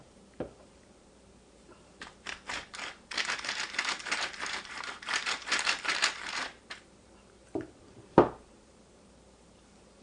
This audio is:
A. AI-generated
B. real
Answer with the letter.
A